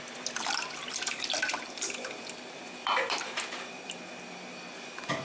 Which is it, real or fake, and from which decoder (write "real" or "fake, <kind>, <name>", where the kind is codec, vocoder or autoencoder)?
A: fake, vocoder, BigVGAN v2